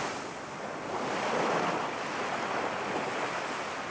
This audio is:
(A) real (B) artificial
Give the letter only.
A